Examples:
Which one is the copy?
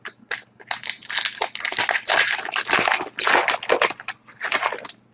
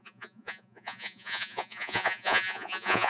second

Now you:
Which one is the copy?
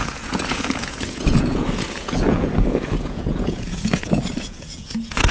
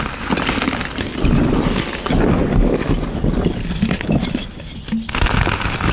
first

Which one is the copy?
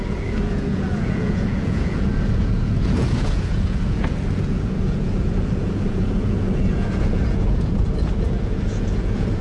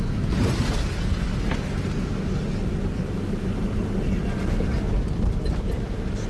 first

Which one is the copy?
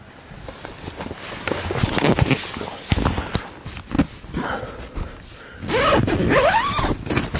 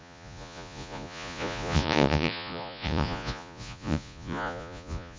second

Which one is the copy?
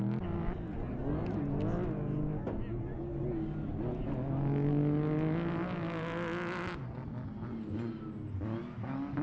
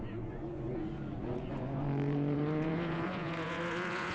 second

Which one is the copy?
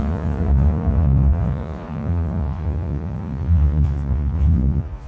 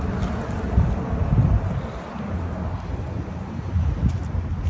first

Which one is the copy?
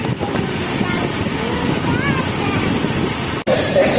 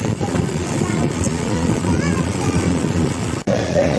second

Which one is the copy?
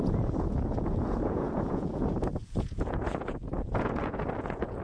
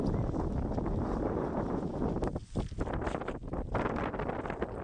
first